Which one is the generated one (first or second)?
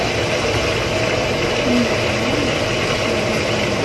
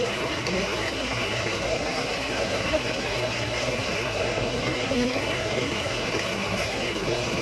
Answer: second